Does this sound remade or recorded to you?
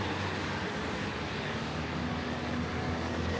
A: remade